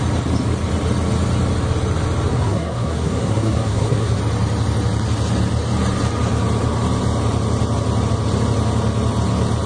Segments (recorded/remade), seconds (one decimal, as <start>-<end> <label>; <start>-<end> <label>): 0.0-2.3 recorded; 2.3-4.2 remade; 4.2-9.7 recorded